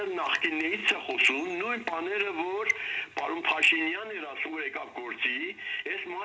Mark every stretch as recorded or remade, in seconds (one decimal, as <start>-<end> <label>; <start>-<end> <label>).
0.0-6.2 recorded